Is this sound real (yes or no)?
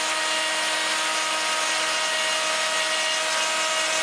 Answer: yes